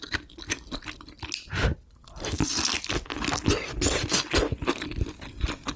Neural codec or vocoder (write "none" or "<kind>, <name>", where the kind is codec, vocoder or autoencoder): none